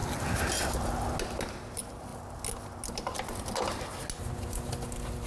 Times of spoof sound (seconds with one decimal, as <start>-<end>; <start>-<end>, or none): none